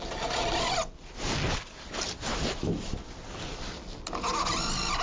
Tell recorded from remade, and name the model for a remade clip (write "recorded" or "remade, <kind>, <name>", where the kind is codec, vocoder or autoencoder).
recorded